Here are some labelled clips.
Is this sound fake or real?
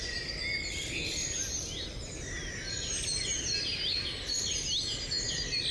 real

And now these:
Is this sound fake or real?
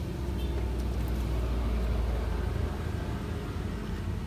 real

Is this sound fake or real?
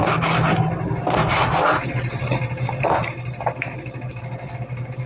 fake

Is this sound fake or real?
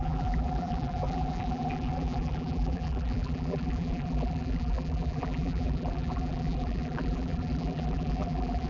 fake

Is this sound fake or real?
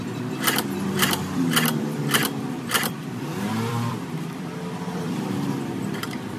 fake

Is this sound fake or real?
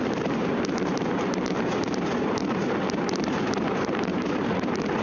fake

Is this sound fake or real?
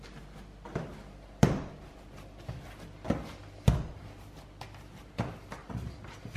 real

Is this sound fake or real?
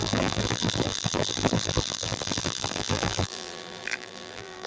fake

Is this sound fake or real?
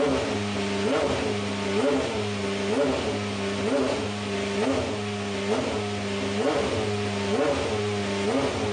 real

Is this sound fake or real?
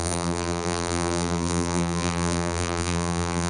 fake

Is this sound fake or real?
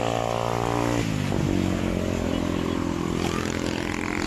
real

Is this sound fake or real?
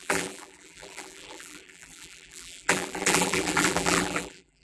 fake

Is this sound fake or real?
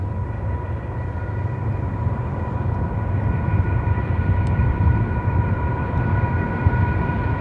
fake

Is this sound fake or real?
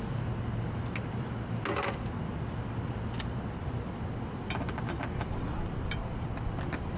real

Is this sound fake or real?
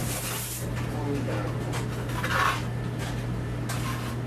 real